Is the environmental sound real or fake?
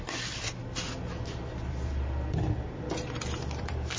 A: fake